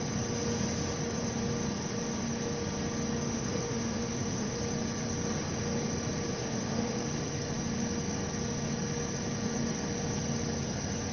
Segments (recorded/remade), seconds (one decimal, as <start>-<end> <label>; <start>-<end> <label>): 0.0-3.3 recorded; 3.3-4.6 remade; 4.6-6.3 recorded; 6.3-7.0 remade; 7.0-11.1 recorded